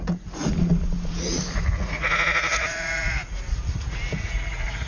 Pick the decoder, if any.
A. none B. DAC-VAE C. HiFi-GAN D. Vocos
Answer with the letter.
D